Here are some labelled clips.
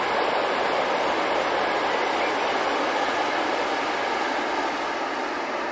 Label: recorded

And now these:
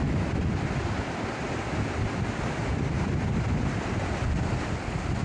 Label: recorded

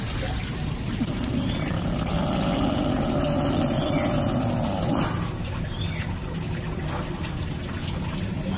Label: recorded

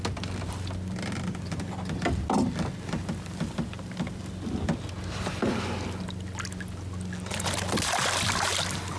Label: recorded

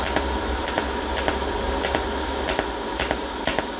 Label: recorded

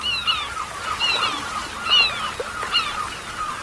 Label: recorded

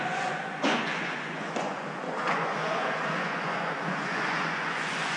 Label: remade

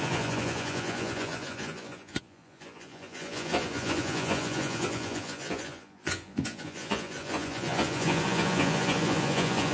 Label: remade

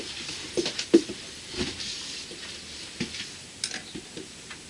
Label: recorded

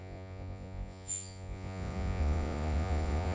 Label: remade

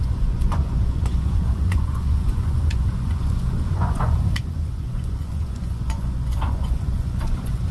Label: remade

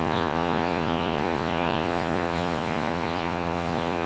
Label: remade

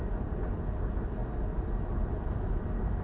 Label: recorded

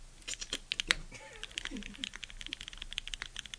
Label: recorded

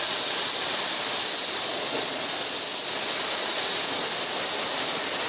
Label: recorded